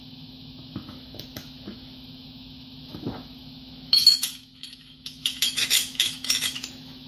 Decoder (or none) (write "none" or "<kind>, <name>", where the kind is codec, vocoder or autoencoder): autoencoder, DAC-VAE